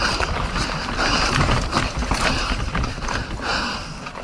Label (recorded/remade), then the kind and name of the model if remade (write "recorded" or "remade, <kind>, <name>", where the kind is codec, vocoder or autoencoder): recorded